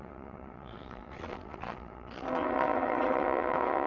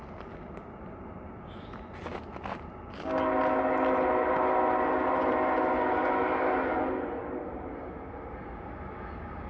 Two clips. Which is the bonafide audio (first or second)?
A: second